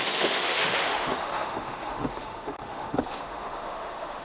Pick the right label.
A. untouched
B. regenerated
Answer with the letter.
B